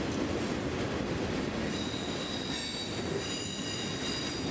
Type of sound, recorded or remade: recorded